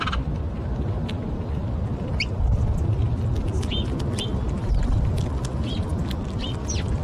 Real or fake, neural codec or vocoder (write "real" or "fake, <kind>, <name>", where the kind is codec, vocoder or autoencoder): real